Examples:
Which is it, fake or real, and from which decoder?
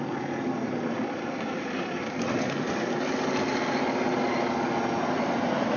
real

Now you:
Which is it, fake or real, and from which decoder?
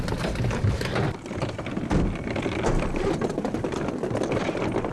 real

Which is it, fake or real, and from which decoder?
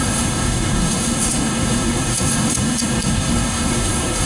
fake, codec, SNAC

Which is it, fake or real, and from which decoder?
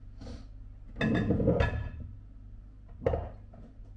real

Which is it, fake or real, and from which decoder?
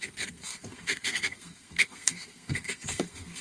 fake, codec, SNAC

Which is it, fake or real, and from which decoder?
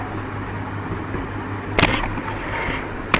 real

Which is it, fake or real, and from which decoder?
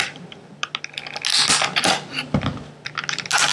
real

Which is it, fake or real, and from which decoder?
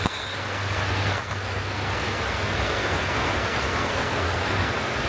fake, codec, SNAC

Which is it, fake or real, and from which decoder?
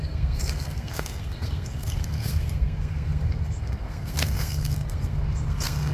fake, codec, SNAC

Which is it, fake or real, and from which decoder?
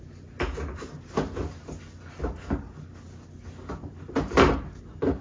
real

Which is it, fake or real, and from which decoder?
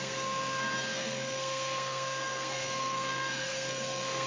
fake, codec, SNAC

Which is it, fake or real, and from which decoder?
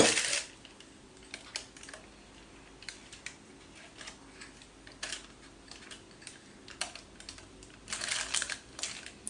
real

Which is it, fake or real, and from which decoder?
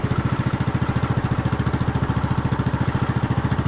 real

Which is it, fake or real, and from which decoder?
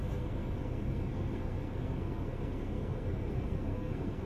fake, codec, SNAC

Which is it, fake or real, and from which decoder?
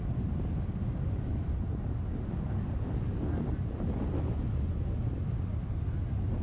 real